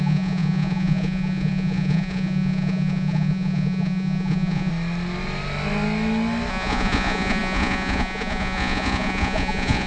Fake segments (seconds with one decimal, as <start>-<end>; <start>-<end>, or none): 0.0-4.7; 6.5-9.9